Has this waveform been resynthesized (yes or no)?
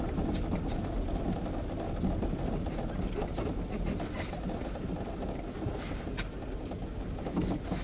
no